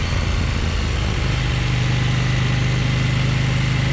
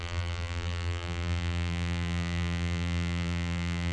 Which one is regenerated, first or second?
second